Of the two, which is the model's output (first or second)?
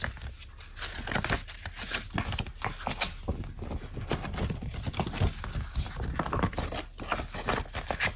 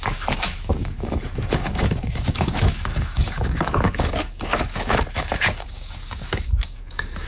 second